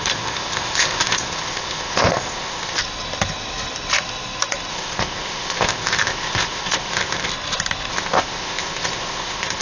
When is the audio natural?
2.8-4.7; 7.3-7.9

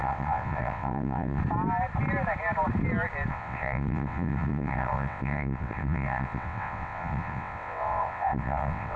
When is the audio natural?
1.4-3.3